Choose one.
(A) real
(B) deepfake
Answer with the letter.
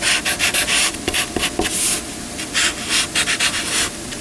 A